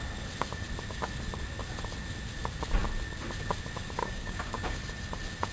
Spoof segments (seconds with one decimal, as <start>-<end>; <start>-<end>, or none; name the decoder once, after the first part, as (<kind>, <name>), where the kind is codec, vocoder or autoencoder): 4.0-4.8 (codec, DAC)